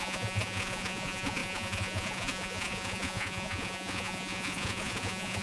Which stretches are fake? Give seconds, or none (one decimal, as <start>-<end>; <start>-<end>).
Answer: 0.0-5.4